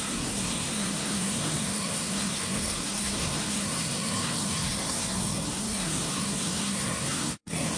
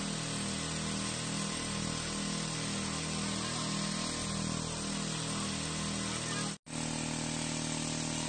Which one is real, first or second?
second